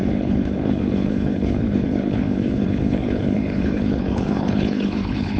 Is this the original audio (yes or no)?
no